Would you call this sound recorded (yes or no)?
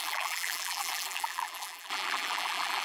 no